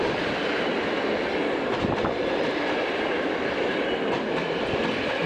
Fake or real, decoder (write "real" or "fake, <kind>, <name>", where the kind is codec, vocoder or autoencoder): fake, vocoder, BigVGAN v2